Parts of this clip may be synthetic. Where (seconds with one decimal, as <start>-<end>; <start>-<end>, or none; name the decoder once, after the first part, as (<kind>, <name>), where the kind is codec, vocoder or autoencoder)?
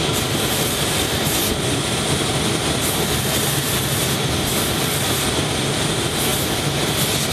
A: 0.0-6.3 (vocoder, BigVGAN v2)